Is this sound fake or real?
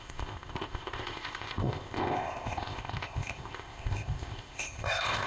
fake